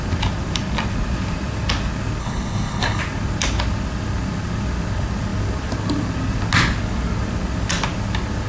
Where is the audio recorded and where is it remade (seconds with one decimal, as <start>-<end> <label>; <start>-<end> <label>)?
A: 0.0-2.2 recorded; 2.2-3.0 remade; 3.0-8.5 recorded